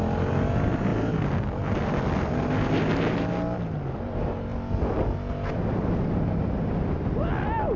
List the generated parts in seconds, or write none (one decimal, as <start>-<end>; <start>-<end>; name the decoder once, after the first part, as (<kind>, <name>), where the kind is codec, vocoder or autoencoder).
none